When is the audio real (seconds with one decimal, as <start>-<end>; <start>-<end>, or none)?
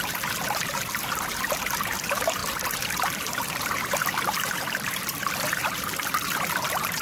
none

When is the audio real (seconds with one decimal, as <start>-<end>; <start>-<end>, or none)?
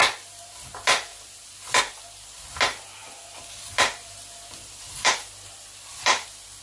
0.0-1.1; 1.8-3.0; 5.1-5.9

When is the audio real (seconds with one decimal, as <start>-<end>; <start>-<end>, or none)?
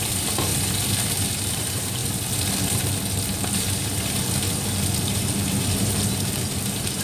0.5-1.5; 2.0-5.1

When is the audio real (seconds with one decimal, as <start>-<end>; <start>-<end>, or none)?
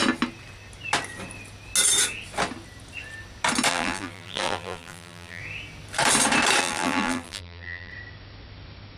0.0-3.7; 5.4-6.6; 7.9-9.0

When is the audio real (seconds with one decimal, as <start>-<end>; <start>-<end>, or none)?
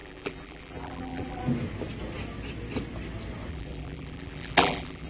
1.4-3.5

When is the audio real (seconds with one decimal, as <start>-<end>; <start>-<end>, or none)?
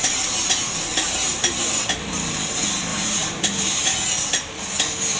0.0-0.9; 2.5-2.9; 3.8-5.2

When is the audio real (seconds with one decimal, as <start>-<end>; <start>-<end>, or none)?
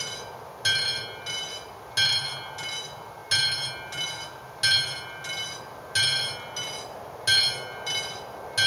0.0-8.7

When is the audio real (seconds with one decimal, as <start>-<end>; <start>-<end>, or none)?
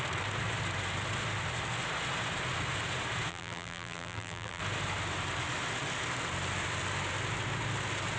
0.0-3.3; 4.6-8.2